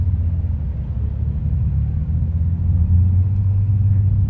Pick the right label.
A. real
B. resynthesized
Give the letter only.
A